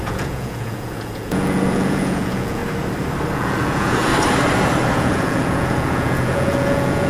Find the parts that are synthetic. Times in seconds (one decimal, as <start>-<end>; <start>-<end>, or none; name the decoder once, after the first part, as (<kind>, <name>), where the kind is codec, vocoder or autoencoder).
0.0-2.6 (vocoder, Vocos); 3.3-4.1; 4.9-7.1